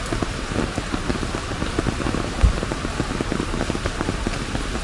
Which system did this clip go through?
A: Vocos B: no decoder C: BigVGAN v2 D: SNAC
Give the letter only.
B